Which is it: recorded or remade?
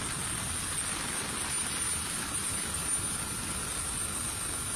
recorded